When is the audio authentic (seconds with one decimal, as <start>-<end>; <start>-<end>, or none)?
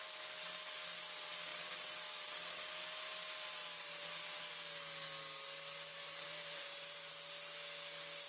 0.0-5.9; 7.1-8.3